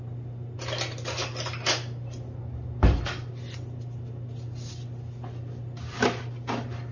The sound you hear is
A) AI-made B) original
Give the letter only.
B